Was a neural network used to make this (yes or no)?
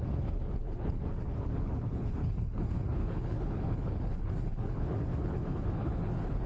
yes